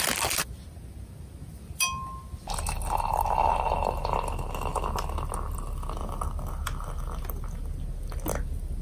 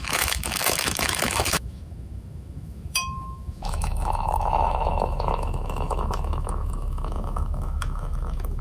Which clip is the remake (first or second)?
second